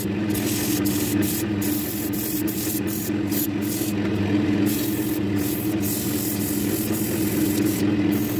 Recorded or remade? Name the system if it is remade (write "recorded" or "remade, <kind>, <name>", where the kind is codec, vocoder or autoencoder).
recorded